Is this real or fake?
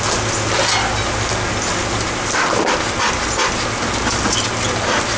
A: real